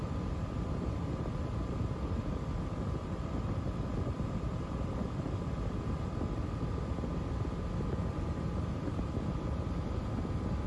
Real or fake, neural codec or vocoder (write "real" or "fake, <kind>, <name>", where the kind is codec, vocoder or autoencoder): real